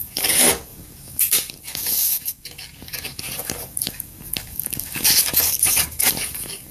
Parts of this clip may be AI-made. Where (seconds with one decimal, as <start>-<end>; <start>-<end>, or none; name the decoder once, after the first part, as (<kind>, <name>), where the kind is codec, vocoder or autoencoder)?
0.0-6.7 (codec, DAC)